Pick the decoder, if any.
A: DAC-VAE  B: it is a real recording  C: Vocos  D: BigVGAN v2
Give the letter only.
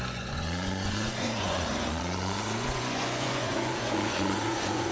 C